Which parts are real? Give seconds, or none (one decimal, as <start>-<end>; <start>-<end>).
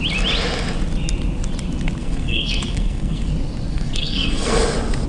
0.0-2.0; 3.3-3.7; 4.6-5.1